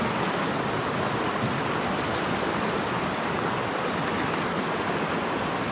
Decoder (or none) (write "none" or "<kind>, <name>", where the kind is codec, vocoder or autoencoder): none